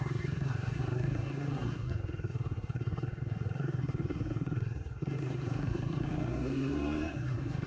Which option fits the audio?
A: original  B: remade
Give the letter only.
B